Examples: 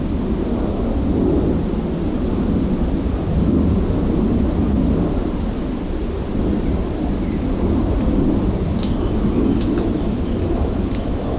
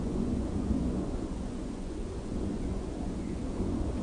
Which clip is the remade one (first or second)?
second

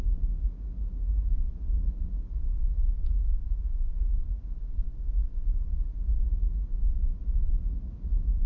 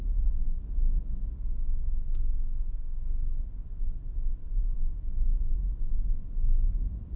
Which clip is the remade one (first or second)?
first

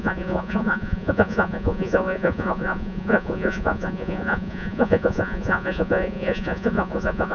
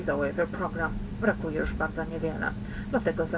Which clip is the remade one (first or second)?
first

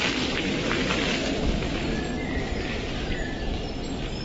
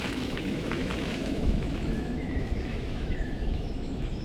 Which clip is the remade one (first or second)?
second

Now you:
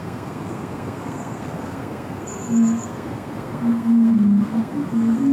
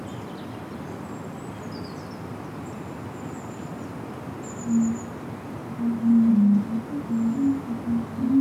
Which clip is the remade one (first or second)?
first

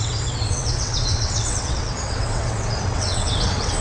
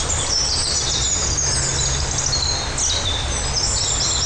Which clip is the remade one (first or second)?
first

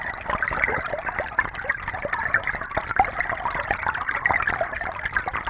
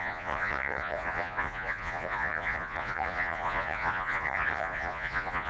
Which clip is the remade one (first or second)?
second